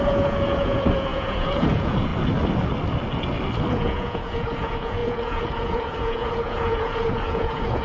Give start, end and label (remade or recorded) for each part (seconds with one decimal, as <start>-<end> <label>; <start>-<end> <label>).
0.0-2.1 remade; 2.1-3.7 recorded; 3.7-7.8 remade